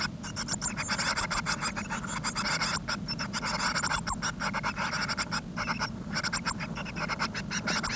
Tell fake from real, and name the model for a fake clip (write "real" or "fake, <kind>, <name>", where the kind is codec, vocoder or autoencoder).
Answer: real